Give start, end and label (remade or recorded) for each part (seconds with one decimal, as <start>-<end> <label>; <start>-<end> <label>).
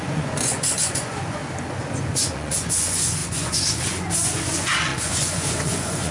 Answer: 0.0-1.4 remade; 1.4-2.0 recorded; 2.0-6.1 remade